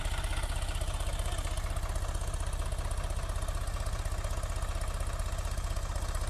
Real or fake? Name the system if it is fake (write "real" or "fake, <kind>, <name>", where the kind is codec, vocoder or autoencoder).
real